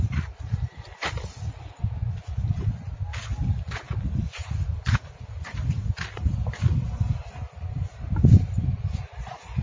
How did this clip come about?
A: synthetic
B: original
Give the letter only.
B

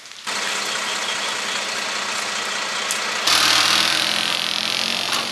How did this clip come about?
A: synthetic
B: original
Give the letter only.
B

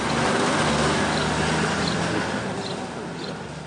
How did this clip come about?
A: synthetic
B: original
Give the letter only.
B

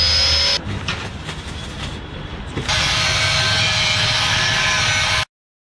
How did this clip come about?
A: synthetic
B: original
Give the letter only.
B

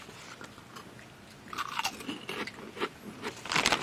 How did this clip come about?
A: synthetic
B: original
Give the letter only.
B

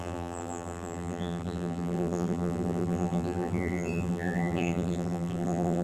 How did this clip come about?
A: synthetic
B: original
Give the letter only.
A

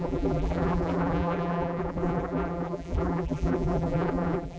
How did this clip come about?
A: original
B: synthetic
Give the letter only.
B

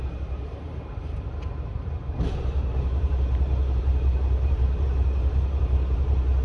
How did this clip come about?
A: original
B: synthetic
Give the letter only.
B